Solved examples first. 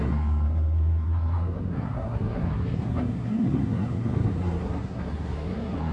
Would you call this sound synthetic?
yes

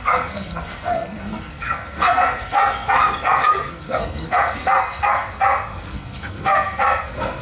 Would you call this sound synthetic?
yes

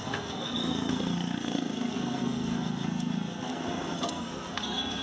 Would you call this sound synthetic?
yes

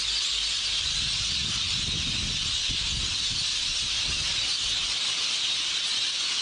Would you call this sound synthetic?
no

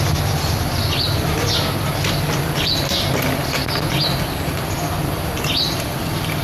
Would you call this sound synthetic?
no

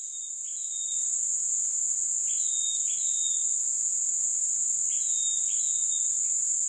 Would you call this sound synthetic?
no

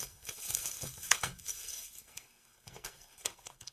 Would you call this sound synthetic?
yes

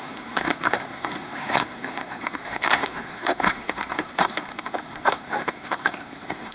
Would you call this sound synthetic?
yes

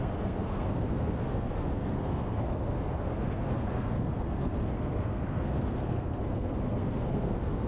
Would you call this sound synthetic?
yes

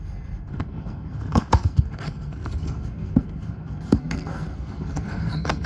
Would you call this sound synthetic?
yes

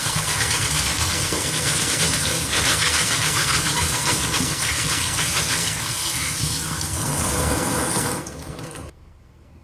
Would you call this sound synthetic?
yes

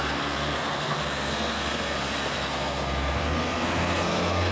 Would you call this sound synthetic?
yes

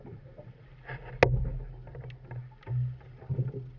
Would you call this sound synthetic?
no